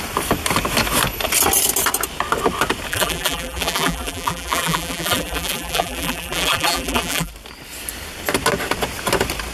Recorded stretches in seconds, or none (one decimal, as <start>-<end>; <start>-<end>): 0.0-2.9; 7.3-9.5